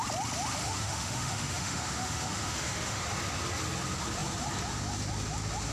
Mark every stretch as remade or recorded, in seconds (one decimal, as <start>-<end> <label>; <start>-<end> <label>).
0.0-0.6 recorded; 0.6-3.0 remade; 3.0-5.7 recorded